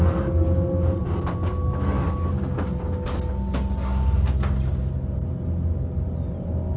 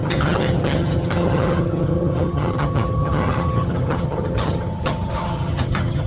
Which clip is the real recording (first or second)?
first